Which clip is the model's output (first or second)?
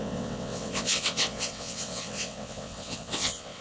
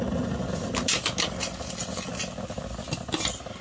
first